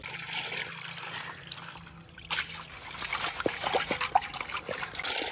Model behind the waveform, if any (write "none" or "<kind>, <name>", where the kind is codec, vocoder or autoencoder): none